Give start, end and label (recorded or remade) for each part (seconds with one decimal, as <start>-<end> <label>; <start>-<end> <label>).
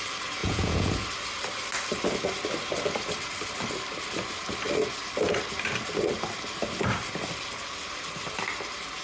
0.0-0.4 recorded; 0.4-0.9 remade; 0.9-9.0 recorded